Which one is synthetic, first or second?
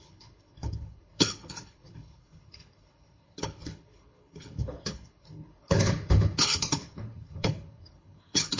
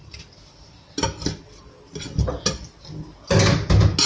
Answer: first